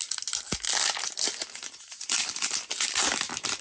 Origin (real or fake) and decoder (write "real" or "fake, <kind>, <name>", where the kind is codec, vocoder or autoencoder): real